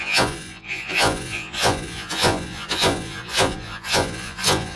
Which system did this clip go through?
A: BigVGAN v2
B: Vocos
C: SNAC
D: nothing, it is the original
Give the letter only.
B